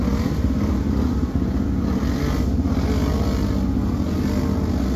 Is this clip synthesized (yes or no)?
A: no